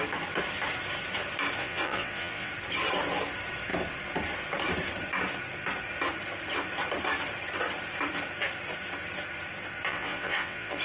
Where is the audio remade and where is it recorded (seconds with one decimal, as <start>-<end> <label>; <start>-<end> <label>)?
0.0-1.6 recorded; 1.6-2.5 remade; 2.5-9.9 recorded; 9.9-10.8 remade